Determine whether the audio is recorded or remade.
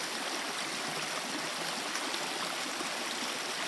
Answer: recorded